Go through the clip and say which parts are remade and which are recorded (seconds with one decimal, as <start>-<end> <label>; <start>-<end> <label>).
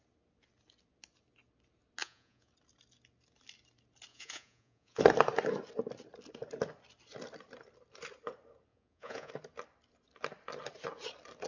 0.0-2.0 recorded; 2.0-2.5 remade; 2.5-4.1 recorded; 4.1-5.0 remade; 5.0-8.7 recorded; 8.7-9.3 remade; 9.3-11.5 recorded